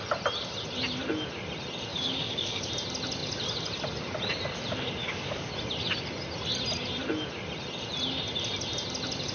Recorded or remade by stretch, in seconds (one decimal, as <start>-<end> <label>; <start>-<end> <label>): 0.0-1.9 recorded; 1.9-2.7 remade; 2.7-5.0 recorded; 5.0-5.5 remade; 5.5-9.3 recorded